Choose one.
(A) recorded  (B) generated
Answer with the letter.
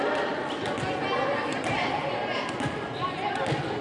A